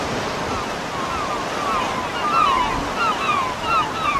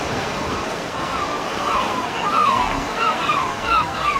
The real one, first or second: first